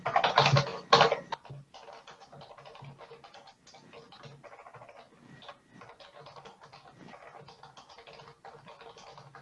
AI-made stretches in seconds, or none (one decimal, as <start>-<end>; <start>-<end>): none